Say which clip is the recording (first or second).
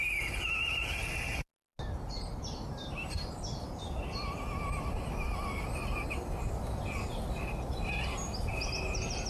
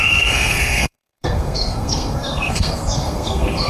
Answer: first